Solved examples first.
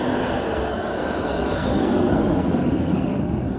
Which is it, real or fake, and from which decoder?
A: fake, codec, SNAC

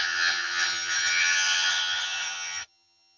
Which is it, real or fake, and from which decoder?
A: fake, vocoder, HiFi-GAN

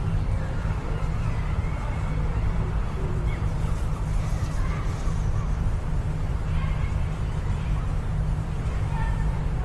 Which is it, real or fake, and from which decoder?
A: fake, vocoder, BigVGAN v2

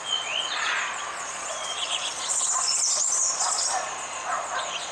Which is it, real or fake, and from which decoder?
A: fake, vocoder, Vocos